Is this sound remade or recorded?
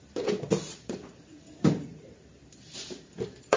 remade